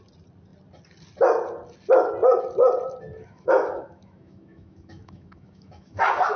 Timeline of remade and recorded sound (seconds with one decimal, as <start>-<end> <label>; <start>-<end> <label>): 0.0-3.1 recorded; 3.1-6.0 remade; 6.0-6.4 recorded